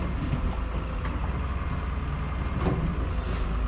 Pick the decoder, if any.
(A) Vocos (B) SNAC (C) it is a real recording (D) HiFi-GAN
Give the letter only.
C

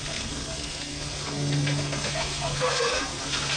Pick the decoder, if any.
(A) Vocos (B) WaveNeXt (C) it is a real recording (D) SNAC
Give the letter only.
D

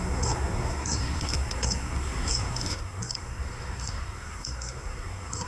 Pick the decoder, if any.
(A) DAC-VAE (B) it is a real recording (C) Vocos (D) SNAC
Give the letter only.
D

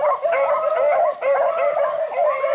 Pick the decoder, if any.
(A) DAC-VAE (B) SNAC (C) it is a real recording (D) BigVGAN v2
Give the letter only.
C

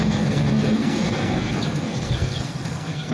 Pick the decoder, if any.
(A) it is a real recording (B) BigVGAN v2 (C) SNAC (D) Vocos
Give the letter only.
C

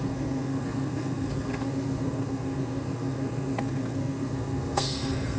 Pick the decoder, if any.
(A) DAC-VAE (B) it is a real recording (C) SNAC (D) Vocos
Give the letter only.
C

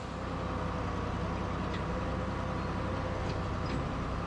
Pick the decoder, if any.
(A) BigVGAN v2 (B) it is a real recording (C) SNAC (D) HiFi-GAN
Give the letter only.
B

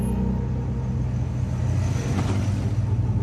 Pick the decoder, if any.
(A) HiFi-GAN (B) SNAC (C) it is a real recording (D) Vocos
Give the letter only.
C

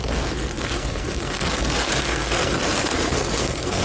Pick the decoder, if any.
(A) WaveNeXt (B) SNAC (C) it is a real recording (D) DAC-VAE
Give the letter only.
B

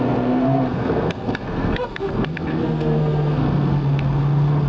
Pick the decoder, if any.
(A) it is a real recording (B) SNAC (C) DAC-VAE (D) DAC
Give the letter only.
B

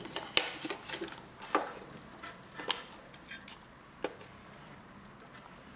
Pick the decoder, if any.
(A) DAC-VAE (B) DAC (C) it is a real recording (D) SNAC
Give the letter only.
C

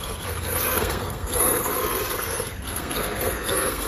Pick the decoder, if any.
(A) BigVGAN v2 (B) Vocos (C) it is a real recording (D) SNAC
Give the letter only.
D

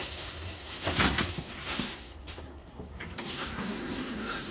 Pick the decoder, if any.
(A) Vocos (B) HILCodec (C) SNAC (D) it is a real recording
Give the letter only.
C